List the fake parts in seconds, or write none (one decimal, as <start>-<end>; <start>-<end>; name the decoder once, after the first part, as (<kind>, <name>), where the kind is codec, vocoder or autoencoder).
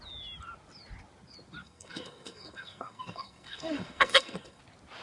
1.6-4.6 (codec, SNAC)